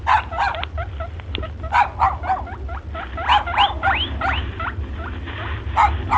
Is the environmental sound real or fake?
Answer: real